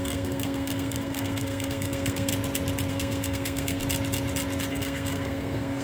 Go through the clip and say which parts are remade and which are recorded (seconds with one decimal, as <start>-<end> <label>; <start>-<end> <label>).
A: 0.0-2.3 remade; 2.3-2.9 recorded; 2.9-3.8 remade; 3.8-4.7 recorded; 4.7-5.8 remade